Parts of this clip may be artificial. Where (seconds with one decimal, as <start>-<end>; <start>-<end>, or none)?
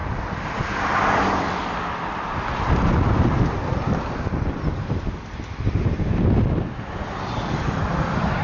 none